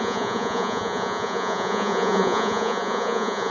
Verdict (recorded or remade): remade